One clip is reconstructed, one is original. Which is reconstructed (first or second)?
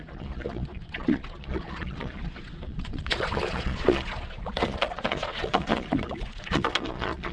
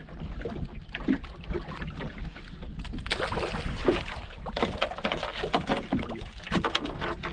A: first